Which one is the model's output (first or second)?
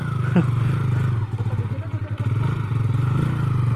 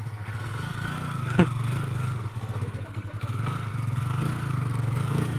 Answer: second